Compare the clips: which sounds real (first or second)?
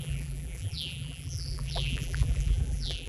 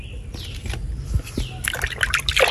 second